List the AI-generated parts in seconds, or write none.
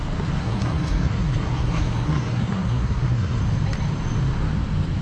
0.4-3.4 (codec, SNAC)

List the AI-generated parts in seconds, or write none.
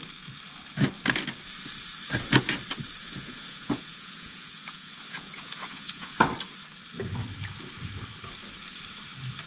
3.0-6.1 (vocoder, Vocos)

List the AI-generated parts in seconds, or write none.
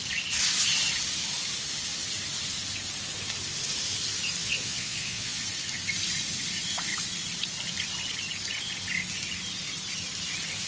4.4-5.4 (vocoder, Vocos)